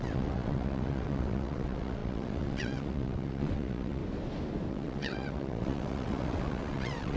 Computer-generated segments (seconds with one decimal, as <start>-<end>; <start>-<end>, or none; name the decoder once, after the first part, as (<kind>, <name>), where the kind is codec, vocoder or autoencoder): 0.0-4.0 (vocoder, WaveNeXt); 4.7-7.2